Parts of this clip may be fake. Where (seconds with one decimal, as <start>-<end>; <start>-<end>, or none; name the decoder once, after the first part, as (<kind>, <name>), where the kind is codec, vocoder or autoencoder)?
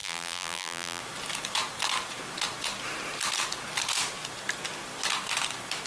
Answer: 0.0-1.0 (vocoder, BigVGAN v2)